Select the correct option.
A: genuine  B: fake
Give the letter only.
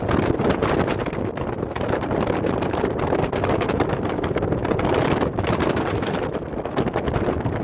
A